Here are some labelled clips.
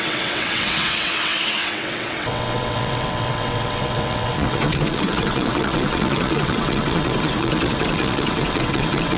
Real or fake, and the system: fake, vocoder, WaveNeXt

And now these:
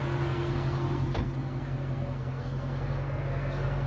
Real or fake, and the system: fake, codec, SNAC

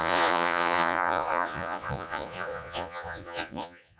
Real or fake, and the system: fake, vocoder, Vocos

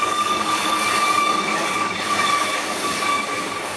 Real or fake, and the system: fake, codec, DAC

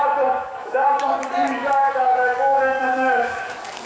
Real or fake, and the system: fake, codec, DAC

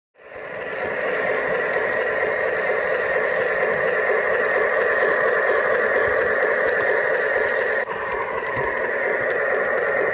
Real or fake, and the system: real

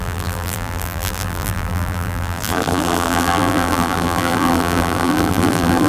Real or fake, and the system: fake, vocoder, BigVGAN v2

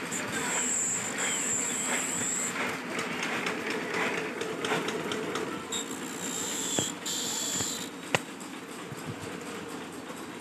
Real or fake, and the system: real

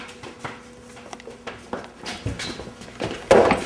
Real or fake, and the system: real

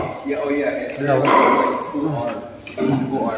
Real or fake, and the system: real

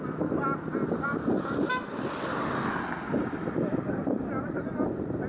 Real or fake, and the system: real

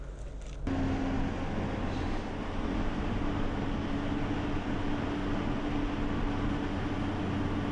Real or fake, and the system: real